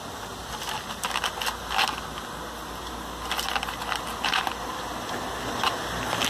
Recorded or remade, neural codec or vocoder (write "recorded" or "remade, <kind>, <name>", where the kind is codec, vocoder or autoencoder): recorded